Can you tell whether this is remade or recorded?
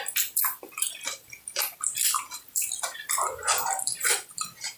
remade